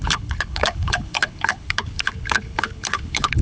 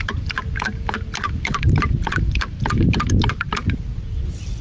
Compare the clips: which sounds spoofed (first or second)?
first